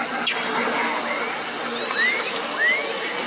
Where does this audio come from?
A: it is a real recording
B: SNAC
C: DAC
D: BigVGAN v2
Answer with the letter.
A